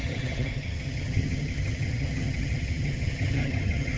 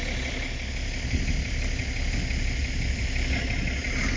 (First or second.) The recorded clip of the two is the second